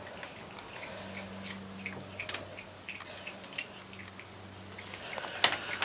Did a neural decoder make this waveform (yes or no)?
no